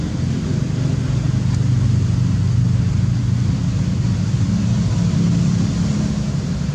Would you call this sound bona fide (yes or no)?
yes